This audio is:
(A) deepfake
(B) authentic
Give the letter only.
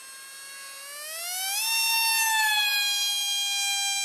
B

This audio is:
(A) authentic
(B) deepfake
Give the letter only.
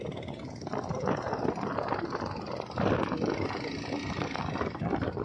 B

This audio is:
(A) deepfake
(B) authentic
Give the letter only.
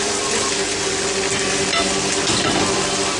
B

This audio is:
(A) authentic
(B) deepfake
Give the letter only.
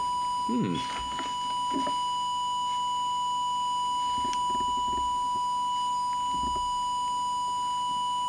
A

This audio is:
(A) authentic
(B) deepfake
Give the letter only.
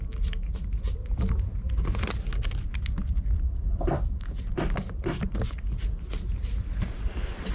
A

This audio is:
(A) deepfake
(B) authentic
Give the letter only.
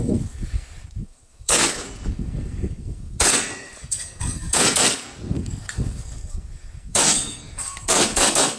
A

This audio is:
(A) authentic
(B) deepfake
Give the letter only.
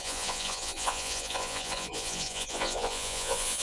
B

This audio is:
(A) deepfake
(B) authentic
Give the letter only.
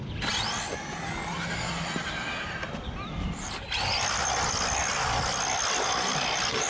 B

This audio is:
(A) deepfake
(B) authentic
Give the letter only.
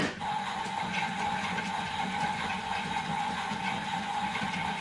A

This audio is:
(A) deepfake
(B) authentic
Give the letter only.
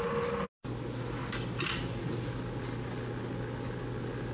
B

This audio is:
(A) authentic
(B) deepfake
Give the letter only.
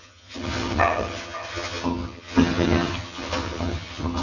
B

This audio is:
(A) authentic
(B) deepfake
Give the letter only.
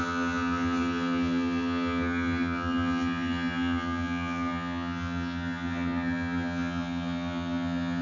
B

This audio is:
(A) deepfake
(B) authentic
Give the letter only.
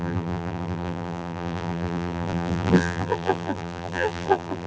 A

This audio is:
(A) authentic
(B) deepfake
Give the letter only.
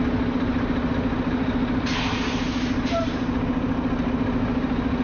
A